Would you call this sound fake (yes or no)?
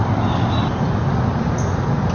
no